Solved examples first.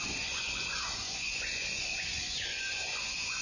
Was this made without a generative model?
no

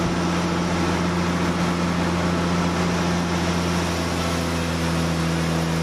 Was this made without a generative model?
yes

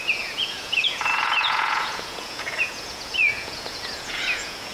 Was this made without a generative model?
no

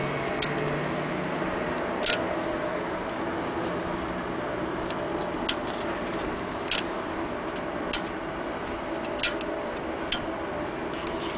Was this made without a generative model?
yes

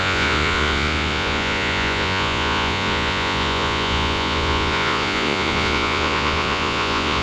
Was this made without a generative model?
no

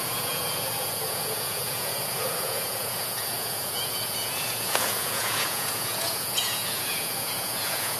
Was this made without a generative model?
no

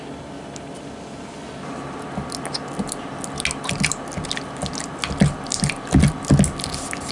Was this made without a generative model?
yes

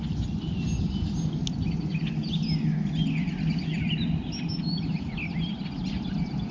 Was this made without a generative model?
yes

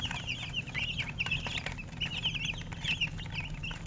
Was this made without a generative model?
yes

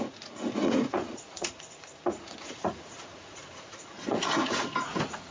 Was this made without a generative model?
no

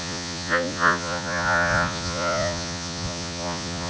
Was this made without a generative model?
no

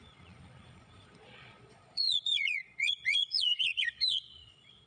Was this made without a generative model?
no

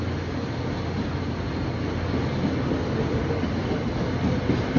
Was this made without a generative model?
yes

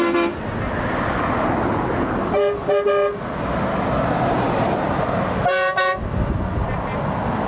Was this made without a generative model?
yes